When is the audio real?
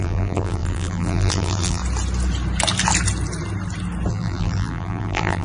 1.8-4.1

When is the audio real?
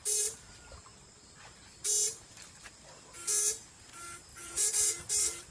0.0-4.3; 5.0-5.5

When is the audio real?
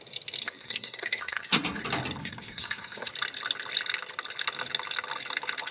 0.0-0.4; 1.8-2.2; 3.1-5.7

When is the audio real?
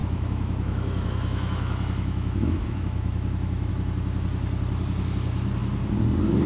3.7-6.5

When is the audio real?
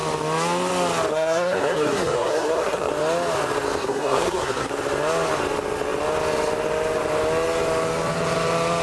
0.0-1.1; 2.9-3.8; 4.7-8.8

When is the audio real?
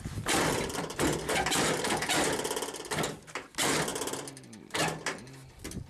0.0-5.9